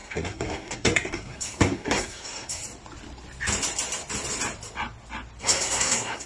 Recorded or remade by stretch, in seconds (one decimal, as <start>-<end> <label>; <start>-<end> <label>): 0.0-2.6 remade; 2.6-5.4 recorded; 5.4-6.3 remade